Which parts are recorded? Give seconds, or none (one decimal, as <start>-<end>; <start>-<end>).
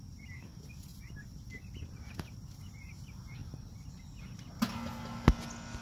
0.0-0.9; 1.9-3.4; 4.2-5.8